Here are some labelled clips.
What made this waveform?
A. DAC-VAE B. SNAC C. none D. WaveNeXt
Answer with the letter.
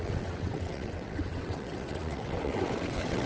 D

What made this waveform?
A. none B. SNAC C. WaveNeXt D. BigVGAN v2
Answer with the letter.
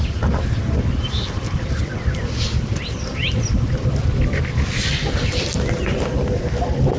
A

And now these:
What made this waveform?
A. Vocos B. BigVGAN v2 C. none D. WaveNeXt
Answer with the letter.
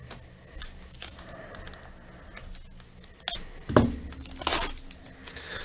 C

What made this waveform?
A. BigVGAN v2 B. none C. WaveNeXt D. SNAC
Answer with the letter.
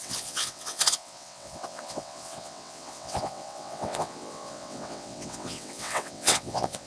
C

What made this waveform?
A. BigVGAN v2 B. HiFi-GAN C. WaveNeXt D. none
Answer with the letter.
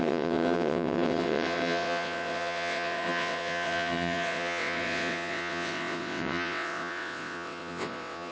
C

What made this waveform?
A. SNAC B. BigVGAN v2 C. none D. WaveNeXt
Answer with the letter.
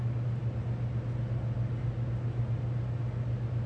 C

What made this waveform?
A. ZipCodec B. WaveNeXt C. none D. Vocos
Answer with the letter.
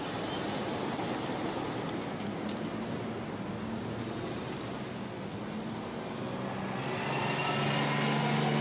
C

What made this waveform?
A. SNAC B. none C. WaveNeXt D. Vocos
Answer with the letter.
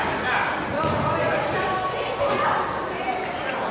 B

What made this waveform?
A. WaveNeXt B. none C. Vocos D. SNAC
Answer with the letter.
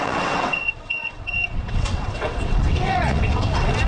A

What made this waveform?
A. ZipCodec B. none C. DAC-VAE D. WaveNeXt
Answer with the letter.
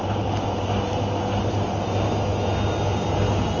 B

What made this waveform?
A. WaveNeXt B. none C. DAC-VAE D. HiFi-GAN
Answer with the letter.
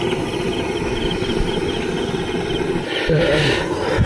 B